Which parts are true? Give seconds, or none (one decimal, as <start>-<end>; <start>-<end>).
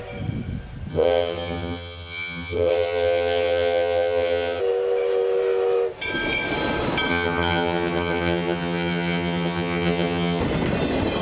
0.0-0.9; 4.6-7.1; 10.4-11.2